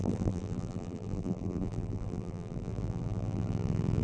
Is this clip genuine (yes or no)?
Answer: no